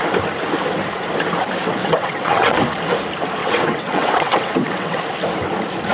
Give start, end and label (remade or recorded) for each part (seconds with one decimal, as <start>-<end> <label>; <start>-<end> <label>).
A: 0.0-1.8 recorded; 1.8-2.6 remade; 2.6-3.4 recorded; 3.4-5.0 remade; 5.0-5.9 recorded